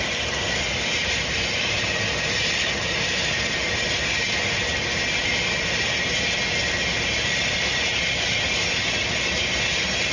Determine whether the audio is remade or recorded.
recorded